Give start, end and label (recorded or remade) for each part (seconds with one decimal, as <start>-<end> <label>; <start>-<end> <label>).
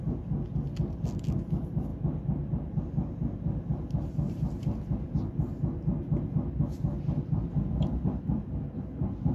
0.0-9.3 recorded